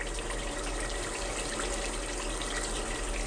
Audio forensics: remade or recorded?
recorded